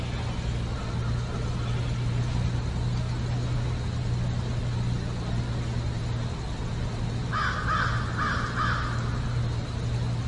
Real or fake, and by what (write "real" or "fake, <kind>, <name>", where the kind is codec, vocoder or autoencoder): real